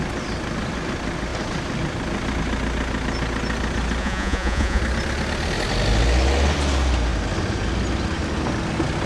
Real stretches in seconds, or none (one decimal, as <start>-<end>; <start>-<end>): 0.0-4.0; 4.8-9.1